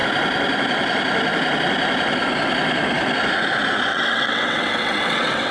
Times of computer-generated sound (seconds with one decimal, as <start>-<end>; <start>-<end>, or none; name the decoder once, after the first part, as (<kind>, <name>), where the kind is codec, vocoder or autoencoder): 3.9-5.5 (vocoder, WaveNeXt)